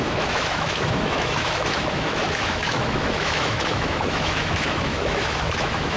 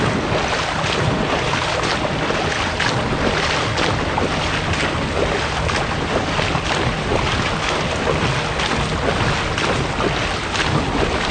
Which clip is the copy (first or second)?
first